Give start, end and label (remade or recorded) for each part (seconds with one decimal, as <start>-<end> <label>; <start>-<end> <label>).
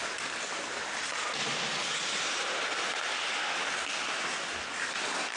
0.0-3.1 recorded; 3.1-3.7 remade; 3.7-5.4 recorded